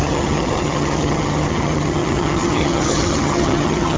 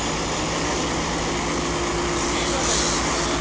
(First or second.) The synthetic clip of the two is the first